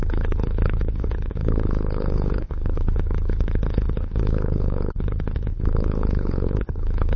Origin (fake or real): fake